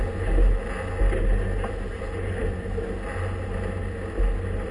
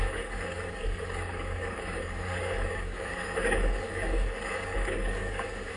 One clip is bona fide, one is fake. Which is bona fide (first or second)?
first